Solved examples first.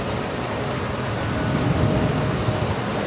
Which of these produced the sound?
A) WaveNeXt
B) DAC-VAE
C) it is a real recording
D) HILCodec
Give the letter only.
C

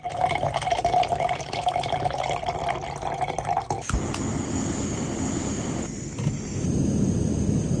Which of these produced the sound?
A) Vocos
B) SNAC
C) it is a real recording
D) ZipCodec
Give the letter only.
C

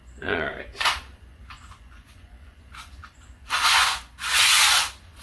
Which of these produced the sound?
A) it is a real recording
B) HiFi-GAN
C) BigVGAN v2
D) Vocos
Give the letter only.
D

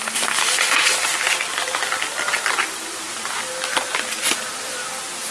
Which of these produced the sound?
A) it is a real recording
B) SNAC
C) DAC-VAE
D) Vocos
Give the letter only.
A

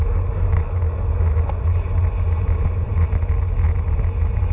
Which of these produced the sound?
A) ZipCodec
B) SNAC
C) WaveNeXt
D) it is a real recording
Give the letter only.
D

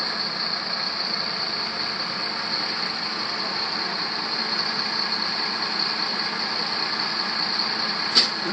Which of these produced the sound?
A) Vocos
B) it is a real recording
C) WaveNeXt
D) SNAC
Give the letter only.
B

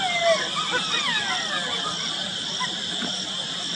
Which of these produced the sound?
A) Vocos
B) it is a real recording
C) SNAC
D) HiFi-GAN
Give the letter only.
B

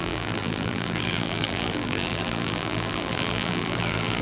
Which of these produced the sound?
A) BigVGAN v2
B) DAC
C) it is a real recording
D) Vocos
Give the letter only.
A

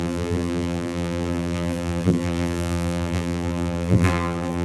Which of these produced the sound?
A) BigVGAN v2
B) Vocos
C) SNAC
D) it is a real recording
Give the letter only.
A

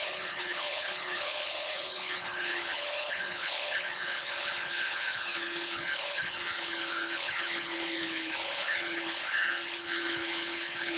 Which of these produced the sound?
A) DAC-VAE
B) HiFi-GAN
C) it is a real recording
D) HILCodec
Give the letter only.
D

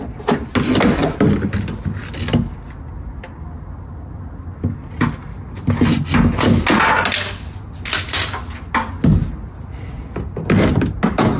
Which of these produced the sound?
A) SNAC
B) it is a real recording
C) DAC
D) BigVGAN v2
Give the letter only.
B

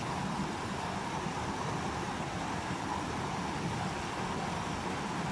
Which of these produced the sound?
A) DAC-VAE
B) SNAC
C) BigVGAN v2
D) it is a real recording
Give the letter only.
D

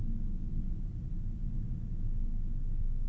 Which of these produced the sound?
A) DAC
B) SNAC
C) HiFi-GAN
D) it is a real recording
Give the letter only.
D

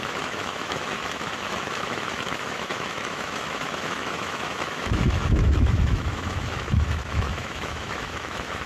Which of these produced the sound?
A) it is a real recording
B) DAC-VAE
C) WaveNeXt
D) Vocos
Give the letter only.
B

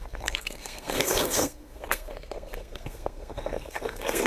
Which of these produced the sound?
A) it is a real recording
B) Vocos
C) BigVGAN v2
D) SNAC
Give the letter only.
D